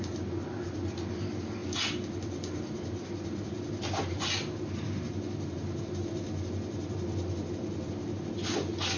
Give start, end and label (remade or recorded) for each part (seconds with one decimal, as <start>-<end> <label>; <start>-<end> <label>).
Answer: 0.0-9.0 recorded